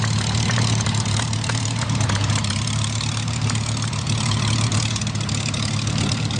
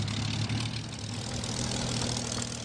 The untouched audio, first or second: second